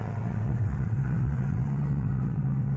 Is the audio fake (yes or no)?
yes